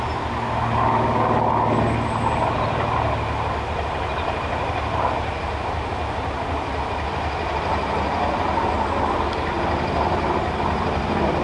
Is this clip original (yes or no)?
yes